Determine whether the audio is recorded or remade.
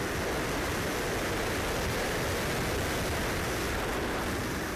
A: recorded